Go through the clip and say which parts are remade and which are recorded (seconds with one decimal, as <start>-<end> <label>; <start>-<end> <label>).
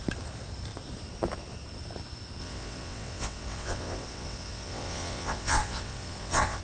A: 0.0-2.4 recorded; 2.4-6.6 remade